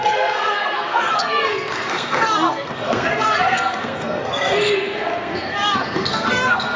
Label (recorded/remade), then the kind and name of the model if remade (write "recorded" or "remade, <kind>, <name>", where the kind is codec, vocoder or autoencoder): remade, codec, SNAC